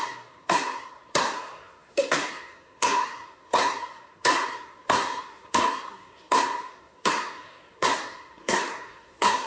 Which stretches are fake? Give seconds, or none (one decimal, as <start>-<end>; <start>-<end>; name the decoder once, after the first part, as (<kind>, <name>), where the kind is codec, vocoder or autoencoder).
0.0-9.5 (codec, SNAC)